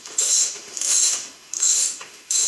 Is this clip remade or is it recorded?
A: remade